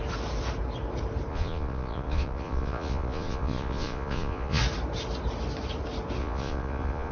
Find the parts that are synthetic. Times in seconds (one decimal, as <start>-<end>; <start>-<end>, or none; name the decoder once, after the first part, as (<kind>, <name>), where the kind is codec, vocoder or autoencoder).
1.3-4.6 (vocoder, Vocos); 6.2-7.1